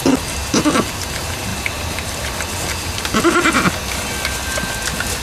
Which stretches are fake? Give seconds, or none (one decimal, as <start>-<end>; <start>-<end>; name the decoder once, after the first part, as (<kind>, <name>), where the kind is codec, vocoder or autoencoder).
1.5-3.0 (vocoder, BigVGAN v2)

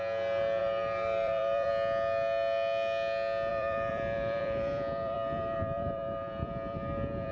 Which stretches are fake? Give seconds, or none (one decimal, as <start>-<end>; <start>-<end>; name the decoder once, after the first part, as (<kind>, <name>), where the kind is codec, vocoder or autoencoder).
0.6-1.7 (vocoder, BigVGAN v2); 3.5-7.3